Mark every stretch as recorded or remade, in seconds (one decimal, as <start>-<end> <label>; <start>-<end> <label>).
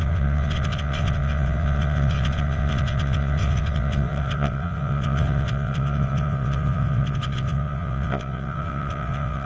0.0-9.5 remade